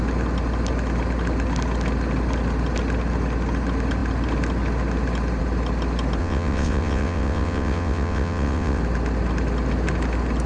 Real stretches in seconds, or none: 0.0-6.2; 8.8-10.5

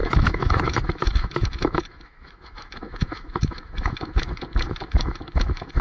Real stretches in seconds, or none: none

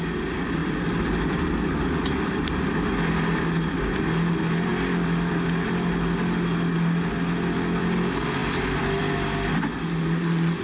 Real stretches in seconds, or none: 0.0-10.6